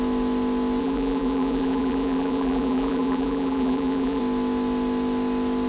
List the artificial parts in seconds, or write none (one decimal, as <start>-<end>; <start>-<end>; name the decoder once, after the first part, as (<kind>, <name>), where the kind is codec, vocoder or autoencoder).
0.8-4.2 (vocoder, BigVGAN v2)